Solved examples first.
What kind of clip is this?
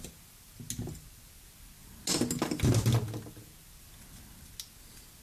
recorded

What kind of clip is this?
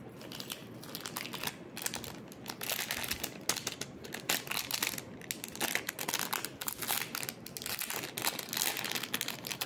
recorded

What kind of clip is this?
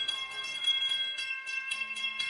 remade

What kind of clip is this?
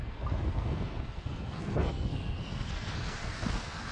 remade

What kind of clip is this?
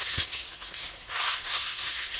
remade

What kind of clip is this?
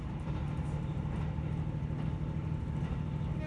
recorded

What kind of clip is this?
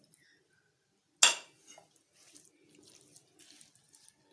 recorded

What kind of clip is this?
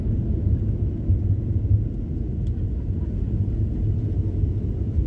recorded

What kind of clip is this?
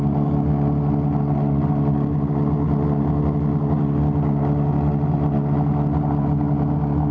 recorded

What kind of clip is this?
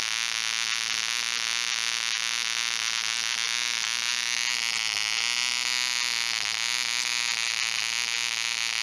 recorded